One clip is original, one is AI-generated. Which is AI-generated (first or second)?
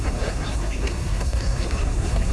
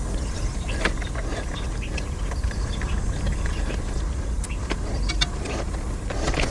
first